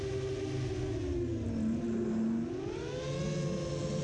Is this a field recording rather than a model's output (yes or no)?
yes